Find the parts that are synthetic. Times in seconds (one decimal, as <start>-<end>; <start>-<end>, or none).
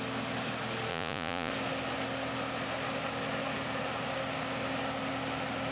0.9-1.5